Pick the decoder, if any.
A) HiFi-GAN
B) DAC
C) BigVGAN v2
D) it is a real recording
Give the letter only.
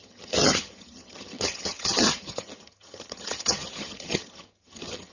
A